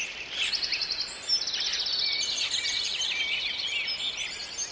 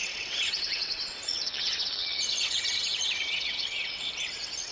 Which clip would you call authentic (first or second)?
first